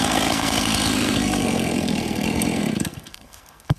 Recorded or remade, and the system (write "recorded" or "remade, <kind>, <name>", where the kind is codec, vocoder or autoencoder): remade, codec, SNAC